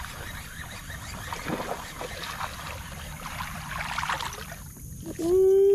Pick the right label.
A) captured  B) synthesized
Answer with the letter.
A